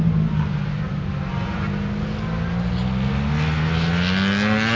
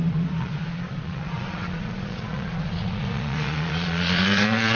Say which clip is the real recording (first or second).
first